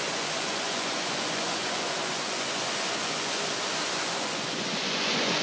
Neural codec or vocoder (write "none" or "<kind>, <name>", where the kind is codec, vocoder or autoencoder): vocoder, Vocos